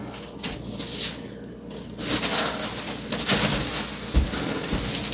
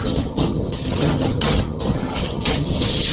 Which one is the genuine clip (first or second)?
first